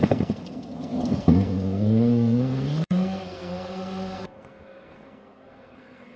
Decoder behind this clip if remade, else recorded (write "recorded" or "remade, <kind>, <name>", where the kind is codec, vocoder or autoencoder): remade, codec, SNAC